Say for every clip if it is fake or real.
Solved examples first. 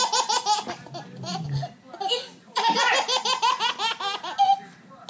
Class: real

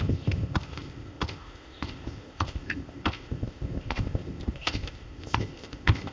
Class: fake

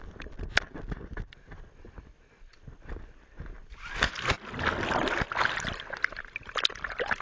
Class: real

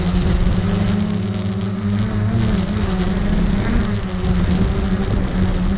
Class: real